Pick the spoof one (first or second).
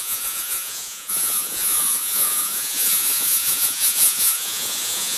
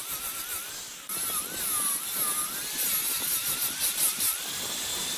first